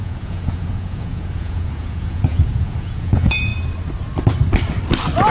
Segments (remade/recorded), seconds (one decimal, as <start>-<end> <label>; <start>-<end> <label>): 0.0-3.5 remade; 3.5-5.3 recorded